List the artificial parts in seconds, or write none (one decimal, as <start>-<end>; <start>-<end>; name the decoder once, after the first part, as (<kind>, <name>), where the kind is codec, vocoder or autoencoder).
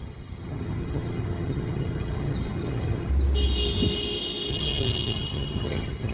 0.0-3.1 (vocoder, HiFi-GAN); 4.5-6.1